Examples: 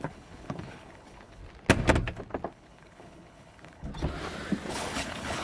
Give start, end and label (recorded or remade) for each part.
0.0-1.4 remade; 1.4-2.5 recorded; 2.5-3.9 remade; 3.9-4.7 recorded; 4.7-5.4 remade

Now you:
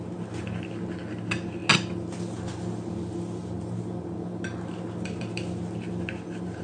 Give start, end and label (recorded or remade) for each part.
0.0-6.6 recorded

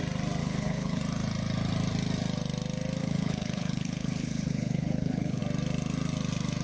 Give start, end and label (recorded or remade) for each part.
0.0-0.4 recorded; 0.4-1.0 remade; 1.0-3.0 recorded; 3.0-5.4 remade; 5.4-6.6 recorded

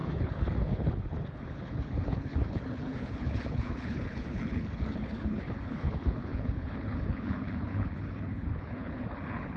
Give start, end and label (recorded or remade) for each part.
0.0-9.6 remade